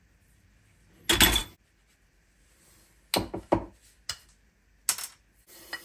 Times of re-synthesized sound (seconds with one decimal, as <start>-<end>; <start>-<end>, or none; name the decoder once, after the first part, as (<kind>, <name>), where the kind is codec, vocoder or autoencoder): none